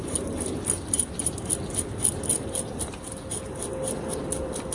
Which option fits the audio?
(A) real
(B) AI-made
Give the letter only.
A